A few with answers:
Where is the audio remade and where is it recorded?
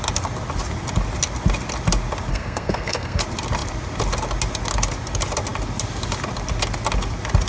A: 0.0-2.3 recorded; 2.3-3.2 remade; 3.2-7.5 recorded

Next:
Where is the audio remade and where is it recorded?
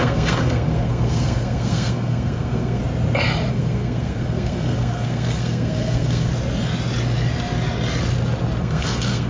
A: 0.0-2.8 remade; 2.8-3.5 recorded; 3.5-6.3 remade; 6.3-8.6 recorded; 8.6-9.3 remade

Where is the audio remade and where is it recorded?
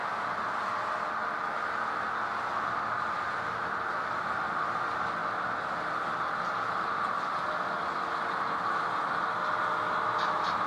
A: 0.0-10.7 recorded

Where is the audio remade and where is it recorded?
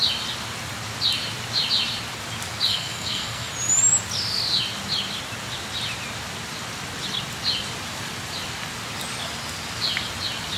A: 0.0-2.7 recorded; 2.7-3.5 remade; 3.5-10.6 recorded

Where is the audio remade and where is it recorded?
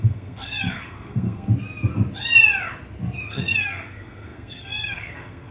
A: 0.0-1.5 remade; 1.5-3.3 recorded; 3.3-5.5 remade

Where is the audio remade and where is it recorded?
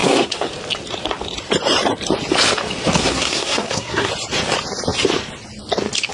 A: 0.0-0.5 remade; 0.5-3.0 recorded; 3.0-4.1 remade; 4.1-6.1 recorded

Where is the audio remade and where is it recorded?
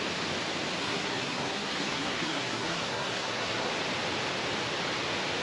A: 0.0-0.8 recorded; 0.8-3.7 remade; 3.7-5.4 recorded